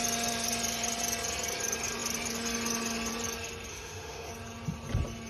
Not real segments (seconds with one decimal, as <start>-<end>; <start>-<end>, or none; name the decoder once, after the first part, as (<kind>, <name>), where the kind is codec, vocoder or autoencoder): 3.7-4.3 (autoencoder, DAC-VAE)